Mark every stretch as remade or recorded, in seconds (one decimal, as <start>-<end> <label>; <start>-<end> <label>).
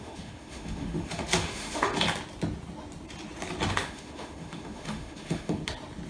0.0-1.9 remade; 1.9-3.7 recorded; 3.7-5.6 remade; 5.6-6.1 recorded